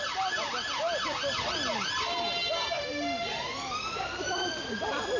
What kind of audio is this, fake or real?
real